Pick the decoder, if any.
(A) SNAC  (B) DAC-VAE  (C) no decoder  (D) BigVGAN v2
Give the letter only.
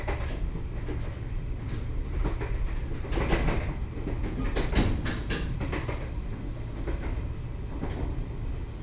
C